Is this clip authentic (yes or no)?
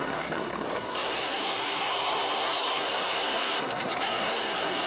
no